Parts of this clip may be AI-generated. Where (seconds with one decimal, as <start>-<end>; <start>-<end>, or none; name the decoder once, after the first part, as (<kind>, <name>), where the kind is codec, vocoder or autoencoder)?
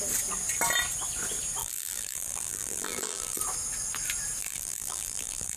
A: 1.6-3.4 (vocoder, BigVGAN v2); 4.4-5.6